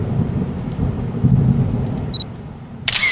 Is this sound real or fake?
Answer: real